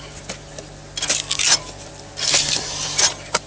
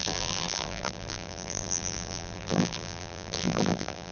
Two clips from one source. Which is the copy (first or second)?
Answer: second